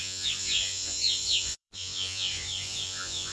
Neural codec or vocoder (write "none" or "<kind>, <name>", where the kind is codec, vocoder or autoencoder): vocoder, Vocos